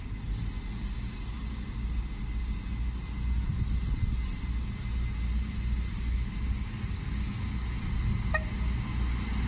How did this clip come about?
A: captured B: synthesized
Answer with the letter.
A